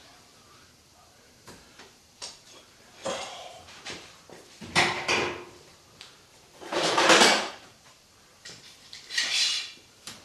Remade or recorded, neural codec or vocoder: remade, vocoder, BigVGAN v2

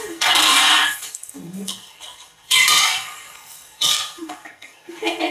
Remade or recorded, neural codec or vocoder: remade, codec, SNAC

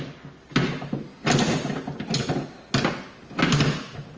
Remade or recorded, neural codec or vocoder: recorded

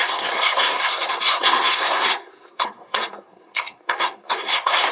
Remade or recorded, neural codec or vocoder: remade, codec, SNAC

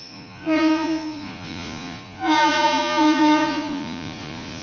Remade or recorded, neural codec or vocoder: remade, vocoder, Vocos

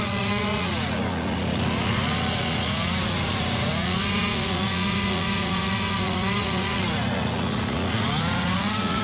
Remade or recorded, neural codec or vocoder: remade, vocoder, Vocos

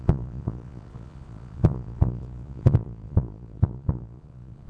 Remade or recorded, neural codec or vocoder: remade, vocoder, Vocos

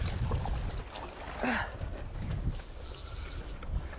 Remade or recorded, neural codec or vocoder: recorded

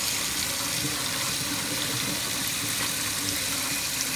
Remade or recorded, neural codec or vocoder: recorded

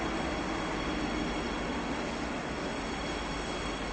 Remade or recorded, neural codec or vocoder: recorded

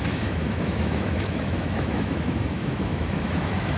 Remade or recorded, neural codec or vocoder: remade, autoencoder, DAC-VAE